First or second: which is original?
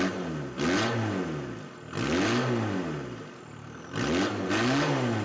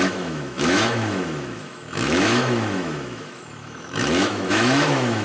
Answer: first